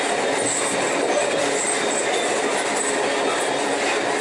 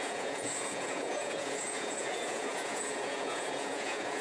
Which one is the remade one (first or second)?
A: second